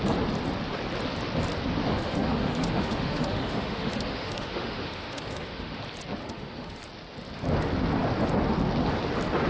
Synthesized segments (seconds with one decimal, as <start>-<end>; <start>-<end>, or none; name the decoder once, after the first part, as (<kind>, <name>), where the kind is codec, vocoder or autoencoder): 1.9-5.8 (autoencoder, DAC-VAE); 6.2-6.8